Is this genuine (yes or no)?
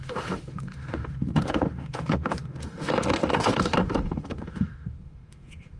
no